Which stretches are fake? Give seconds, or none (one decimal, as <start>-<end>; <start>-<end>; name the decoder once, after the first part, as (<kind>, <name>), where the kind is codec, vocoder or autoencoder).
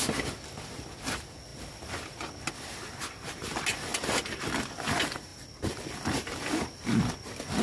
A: none